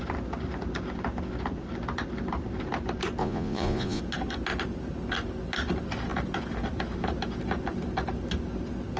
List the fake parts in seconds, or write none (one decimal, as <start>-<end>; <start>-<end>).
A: 3.2-4.0